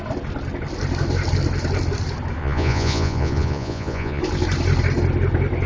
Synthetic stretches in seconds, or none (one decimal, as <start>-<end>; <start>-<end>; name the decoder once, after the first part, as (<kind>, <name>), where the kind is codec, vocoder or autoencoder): 2.4-4.2 (vocoder, Vocos)